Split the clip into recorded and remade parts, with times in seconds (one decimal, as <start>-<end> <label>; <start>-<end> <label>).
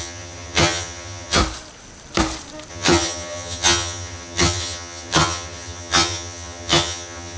0.0-1.4 remade; 1.4-2.7 recorded; 2.7-7.4 remade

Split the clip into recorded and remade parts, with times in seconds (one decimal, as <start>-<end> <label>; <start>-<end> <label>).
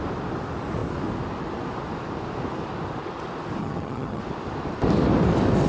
0.0-3.6 recorded; 3.6-4.2 remade; 4.2-5.7 recorded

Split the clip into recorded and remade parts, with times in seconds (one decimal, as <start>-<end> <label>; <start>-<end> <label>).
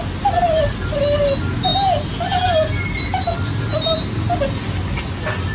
0.0-5.5 recorded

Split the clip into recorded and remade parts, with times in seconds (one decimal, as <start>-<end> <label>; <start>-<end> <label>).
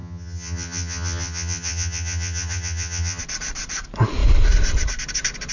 0.0-3.2 remade; 3.2-5.5 recorded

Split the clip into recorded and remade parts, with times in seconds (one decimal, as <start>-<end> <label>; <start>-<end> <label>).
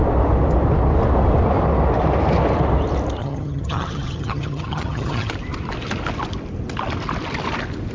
0.0-3.2 recorded; 3.2-5.3 remade; 5.3-7.9 recorded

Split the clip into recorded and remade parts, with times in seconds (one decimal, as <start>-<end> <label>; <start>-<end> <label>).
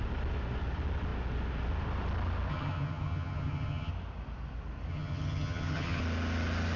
0.0-2.5 recorded; 2.5-3.9 remade; 3.9-4.9 recorded; 4.9-6.0 remade; 6.0-6.8 recorded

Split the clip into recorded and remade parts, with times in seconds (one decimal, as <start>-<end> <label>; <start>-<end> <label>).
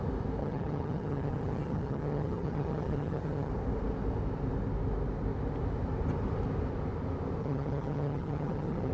0.0-0.4 recorded; 0.4-3.5 remade; 3.5-7.4 recorded; 7.4-8.9 remade